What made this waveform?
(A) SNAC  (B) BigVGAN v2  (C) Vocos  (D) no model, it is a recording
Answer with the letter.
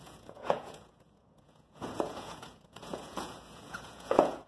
C